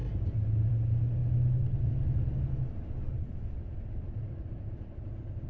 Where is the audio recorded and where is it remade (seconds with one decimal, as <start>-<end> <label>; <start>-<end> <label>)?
0.0-5.5 recorded